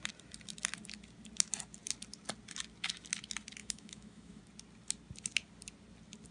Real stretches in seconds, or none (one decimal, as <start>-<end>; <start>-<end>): 0.0-3.6; 4.4-6.3